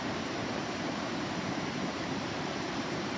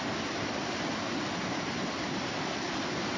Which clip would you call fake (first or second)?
first